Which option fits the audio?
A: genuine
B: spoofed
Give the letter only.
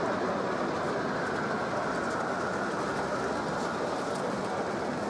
A